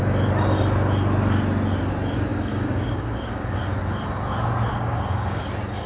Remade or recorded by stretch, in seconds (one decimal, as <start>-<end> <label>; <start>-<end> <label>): 0.0-2.3 recorded; 2.3-3.6 remade; 3.6-4.7 recorded; 4.7-5.4 remade; 5.4-5.9 recorded